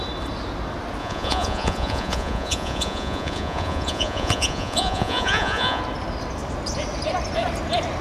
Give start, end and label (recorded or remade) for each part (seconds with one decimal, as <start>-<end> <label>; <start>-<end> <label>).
0.0-1.0 recorded; 1.0-5.8 remade; 5.8-8.0 recorded